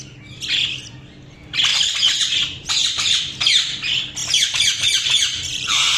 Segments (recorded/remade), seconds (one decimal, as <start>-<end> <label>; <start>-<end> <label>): 0.0-1.7 recorded; 1.7-3.2 remade; 3.2-4.2 recorded; 4.2-6.0 remade